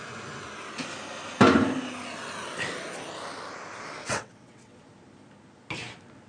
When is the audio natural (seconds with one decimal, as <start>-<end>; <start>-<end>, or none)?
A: 0.0-4.0; 4.8-6.3